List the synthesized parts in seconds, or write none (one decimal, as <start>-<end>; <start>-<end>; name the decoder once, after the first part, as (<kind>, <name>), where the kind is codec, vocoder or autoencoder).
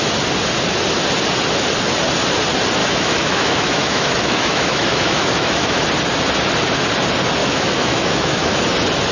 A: 2.8-5.8 (autoencoder, DAC-VAE); 7.4-8.6